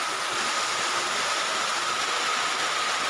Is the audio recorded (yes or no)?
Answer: yes